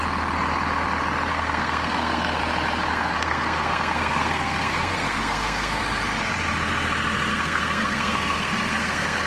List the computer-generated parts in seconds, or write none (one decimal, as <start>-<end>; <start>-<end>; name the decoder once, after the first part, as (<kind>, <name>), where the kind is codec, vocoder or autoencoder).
1.3-2.4 (codec, SNAC); 2.9-5.8; 7.3-9.3